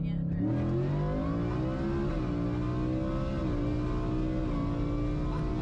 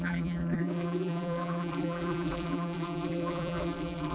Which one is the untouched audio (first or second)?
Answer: first